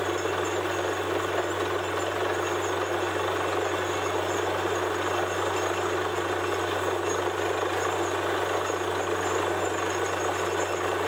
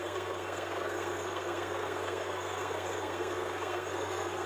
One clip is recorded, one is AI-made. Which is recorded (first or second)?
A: first